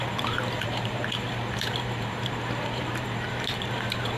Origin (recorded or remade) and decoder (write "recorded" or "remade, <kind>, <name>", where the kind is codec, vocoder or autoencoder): remade, vocoder, BigVGAN v2